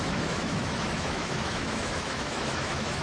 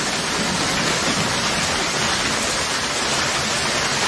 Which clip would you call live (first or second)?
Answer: second